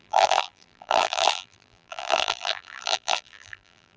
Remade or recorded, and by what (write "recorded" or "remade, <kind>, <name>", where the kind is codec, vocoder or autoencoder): remade, vocoder, BigVGAN v2